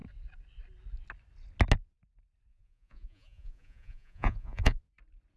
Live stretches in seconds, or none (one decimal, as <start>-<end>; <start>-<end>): 0.0-2.5; 4.8-5.4